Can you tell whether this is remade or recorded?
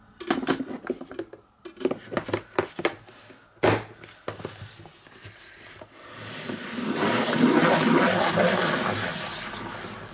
recorded